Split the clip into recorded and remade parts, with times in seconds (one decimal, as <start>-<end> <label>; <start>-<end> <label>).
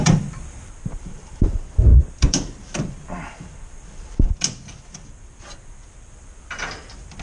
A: 0.0-7.2 remade